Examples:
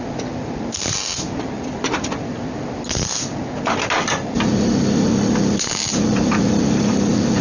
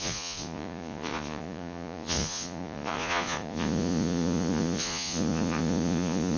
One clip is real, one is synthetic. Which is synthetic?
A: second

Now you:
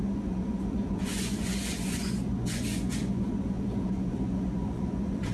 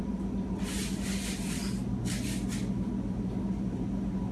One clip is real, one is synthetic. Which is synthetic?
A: first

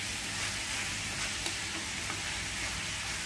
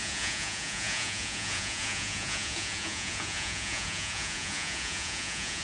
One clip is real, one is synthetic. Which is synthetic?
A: second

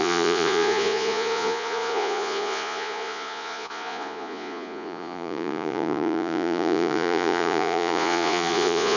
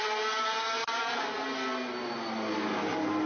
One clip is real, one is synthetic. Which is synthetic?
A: first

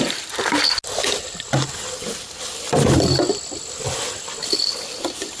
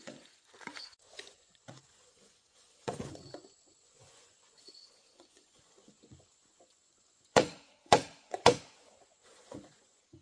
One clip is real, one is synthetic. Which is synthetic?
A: second